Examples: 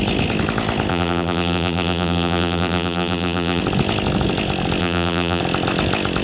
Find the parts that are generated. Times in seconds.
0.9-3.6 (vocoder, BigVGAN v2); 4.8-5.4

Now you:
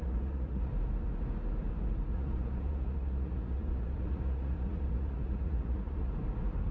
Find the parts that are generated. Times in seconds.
0.0-0.7 (vocoder, Vocos); 2.1-6.1

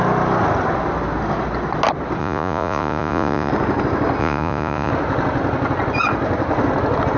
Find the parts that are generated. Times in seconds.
2.2-3.5 (vocoder, Vocos); 4.2-4.9

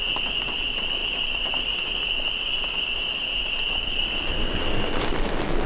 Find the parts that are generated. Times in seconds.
4.3-4.9 (codec, SNAC)

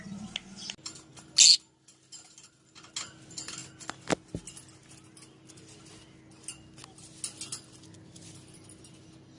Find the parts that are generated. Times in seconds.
none

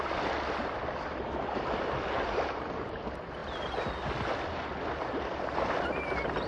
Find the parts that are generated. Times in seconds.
none

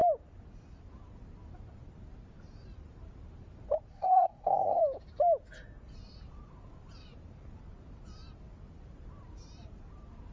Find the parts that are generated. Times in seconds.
3.9-4.8 (codec, SNAC)